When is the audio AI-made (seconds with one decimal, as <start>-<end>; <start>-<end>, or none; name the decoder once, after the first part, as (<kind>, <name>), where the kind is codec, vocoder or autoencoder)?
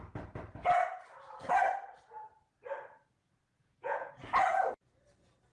3.2-4.1 (vocoder, Vocos)